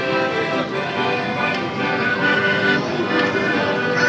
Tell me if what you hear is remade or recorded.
recorded